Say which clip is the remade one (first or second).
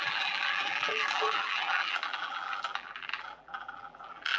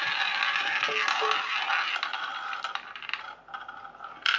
first